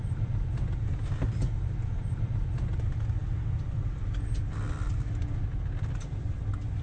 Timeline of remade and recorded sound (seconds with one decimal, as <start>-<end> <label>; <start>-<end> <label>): 0.0-6.8 recorded